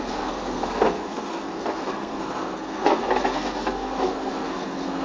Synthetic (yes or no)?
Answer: yes